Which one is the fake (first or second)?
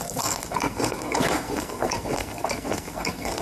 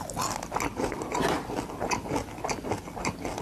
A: first